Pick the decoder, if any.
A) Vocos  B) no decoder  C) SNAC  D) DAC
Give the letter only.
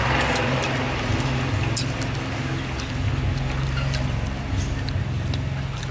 B